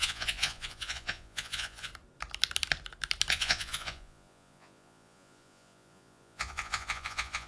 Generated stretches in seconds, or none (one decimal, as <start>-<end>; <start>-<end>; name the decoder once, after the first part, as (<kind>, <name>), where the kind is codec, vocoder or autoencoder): 0.0-1.9 (vocoder, Vocos); 3.3-7.5